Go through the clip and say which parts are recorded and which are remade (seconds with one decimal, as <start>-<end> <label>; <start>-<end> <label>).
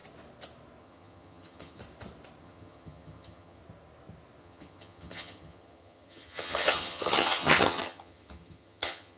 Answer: 0.0-0.8 recorded; 0.8-1.8 remade; 1.8-2.4 recorded; 2.4-3.6 remade; 3.6-4.4 recorded; 4.4-9.2 remade